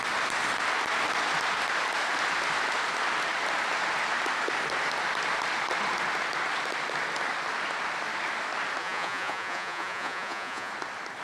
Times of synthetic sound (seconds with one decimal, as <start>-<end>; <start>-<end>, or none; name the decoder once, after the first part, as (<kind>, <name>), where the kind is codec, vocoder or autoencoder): 8.8-10.7 (vocoder, Vocos)